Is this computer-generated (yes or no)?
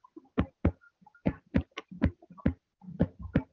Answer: no